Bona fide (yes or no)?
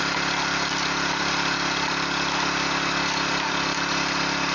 no